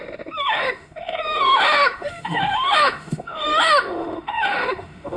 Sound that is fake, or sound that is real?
fake